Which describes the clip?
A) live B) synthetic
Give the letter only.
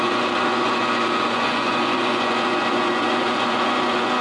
B